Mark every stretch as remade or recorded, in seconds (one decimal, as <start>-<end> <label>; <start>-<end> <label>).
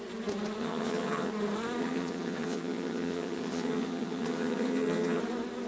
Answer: 0.0-0.6 recorded; 0.6-1.3 remade; 1.3-1.8 recorded; 1.8-5.2 remade; 5.2-5.7 recorded